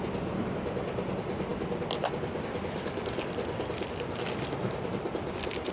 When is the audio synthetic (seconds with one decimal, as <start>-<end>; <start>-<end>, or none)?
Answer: none